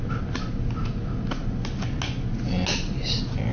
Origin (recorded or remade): recorded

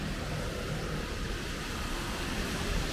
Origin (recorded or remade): recorded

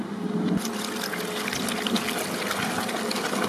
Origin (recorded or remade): recorded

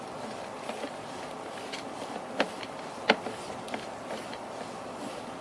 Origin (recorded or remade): remade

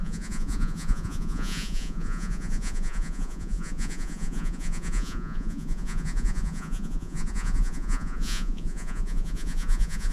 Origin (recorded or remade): remade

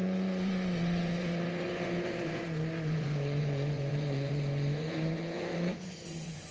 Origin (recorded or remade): remade